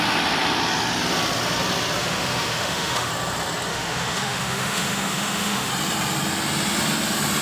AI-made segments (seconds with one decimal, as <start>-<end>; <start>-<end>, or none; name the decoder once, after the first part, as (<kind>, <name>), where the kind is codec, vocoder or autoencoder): 2.0-3.1 (autoencoder, DAC-VAE); 3.7-5.7